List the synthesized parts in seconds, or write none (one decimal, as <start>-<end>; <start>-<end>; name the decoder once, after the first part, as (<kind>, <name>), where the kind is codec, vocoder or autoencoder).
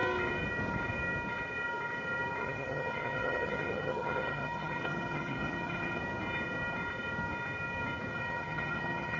2.4-6.0 (vocoder, HiFi-GAN); 8.1-9.2